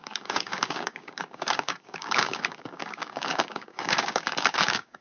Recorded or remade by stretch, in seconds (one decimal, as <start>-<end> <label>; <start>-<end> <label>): 0.0-5.0 remade